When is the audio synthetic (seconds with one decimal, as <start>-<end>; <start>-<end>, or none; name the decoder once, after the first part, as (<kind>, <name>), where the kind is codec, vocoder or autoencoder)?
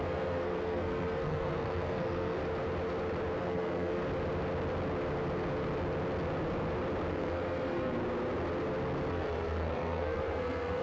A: 0.0-2.4 (codec, SNAC); 3.4-4.0; 7.1-8.0; 9.1-10.8